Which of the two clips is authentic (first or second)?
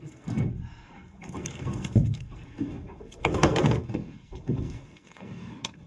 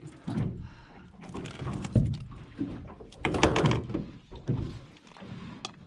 second